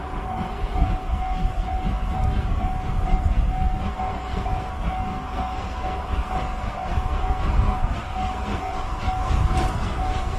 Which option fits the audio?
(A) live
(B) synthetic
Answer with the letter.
B